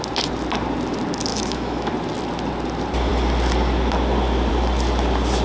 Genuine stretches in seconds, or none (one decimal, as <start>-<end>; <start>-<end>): 0.0-1.3; 1.9-5.4